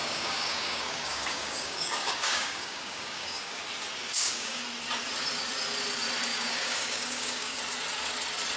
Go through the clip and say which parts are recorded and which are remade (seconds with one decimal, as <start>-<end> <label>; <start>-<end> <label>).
0.0-3.6 remade; 3.6-4.1 recorded; 4.1-4.6 remade; 4.6-6.3 recorded; 6.3-7.6 remade; 7.6-8.6 recorded